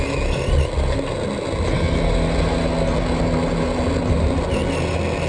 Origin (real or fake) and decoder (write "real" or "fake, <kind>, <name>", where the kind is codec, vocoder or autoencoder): real